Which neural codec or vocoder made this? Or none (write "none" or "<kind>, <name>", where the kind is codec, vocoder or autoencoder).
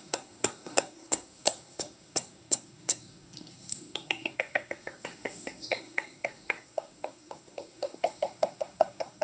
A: codec, SNAC